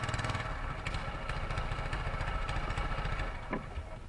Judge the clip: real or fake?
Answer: real